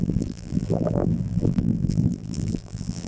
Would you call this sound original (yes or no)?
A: no